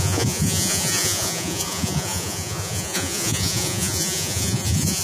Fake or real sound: fake